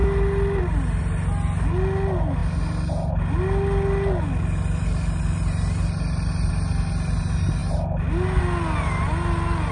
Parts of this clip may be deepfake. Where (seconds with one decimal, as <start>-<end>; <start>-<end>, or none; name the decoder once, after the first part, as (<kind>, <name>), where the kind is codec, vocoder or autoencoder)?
none